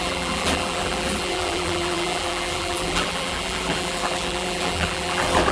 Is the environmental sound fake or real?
fake